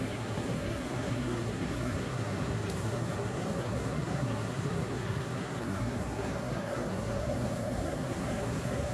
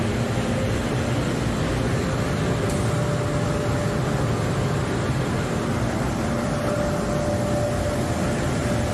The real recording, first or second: second